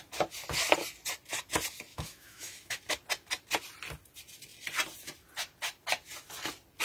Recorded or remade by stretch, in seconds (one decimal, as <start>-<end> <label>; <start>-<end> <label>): 0.0-1.9 recorded; 1.9-2.8 remade; 2.8-6.8 recorded